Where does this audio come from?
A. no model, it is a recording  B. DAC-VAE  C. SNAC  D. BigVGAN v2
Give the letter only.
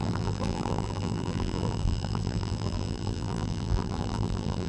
D